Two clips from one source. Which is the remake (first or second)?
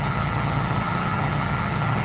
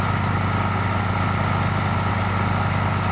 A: first